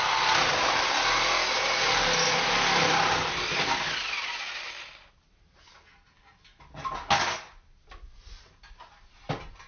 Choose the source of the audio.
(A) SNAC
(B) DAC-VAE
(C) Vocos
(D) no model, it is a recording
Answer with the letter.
D